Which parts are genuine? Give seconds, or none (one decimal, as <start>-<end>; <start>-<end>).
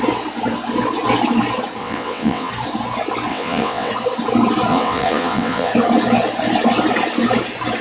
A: 0.0-1.8; 2.5-3.3; 3.9-4.7; 5.7-7.8